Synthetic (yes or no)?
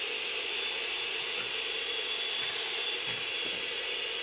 no